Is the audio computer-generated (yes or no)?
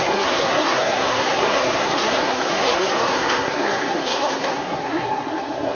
yes